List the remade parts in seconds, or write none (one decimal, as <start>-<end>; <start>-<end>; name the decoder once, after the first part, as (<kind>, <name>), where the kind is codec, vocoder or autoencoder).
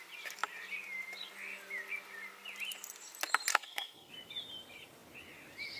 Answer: 3.5-4.1 (codec, SNAC)